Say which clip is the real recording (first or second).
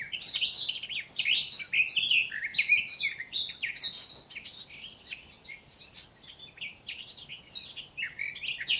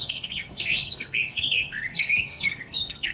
first